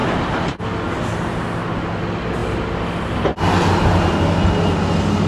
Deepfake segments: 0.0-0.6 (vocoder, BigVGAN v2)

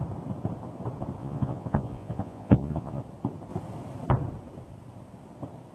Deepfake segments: 1.2-3.0 (vocoder, Vocos)